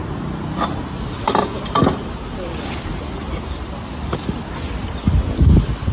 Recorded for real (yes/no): yes